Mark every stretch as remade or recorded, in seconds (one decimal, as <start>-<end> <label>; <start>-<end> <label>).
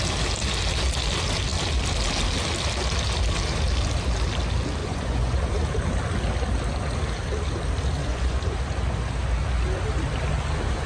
0.0-4.8 recorded; 4.8-5.4 remade; 5.4-8.0 recorded; 8.0-8.6 remade; 8.6-10.9 recorded